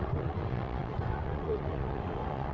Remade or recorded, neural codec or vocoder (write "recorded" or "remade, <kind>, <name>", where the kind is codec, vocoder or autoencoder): remade, vocoder, WaveNeXt